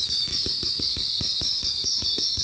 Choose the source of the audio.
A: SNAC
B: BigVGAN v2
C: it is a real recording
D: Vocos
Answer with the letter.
A